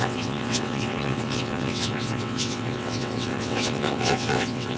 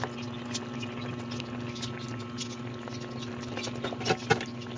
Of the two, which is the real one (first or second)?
second